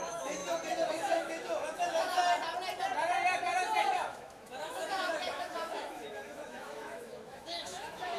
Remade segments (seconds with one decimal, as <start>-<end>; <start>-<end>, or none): 0.0-0.4; 0.9-2.2; 3.8-8.2